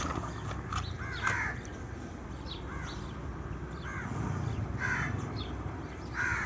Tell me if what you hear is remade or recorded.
recorded